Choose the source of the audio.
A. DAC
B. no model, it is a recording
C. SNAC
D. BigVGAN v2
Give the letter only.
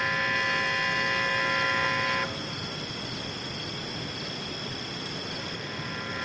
B